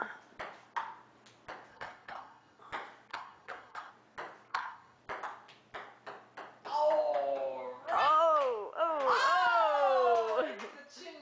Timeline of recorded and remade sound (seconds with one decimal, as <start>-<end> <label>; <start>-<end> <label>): 0.0-1.7 recorded; 1.7-2.6 remade; 2.6-3.1 recorded; 3.1-3.9 remade; 3.9-4.5 recorded; 4.5-5.0 remade; 5.0-11.2 recorded